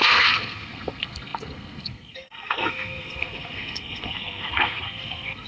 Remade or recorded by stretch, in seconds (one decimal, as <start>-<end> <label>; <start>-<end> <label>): 0.0-5.5 remade

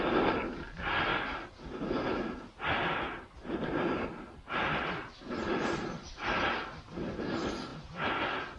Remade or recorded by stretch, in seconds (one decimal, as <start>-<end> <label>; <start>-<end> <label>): 0.0-8.6 recorded

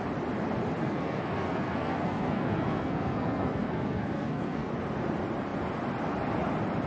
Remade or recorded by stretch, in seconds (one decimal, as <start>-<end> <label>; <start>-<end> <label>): 0.0-0.8 recorded; 0.8-4.7 remade; 4.7-6.9 recorded